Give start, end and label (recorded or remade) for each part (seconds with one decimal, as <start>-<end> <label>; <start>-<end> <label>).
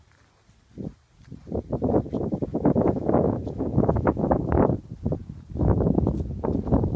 0.0-2.5 recorded; 2.5-4.5 remade; 4.5-7.0 recorded